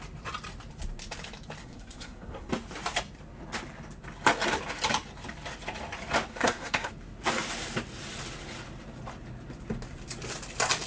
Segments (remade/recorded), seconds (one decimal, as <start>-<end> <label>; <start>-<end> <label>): 0.0-1.6 recorded; 1.6-2.5 remade; 2.5-6.3 recorded; 6.3-6.9 remade; 6.9-10.9 recorded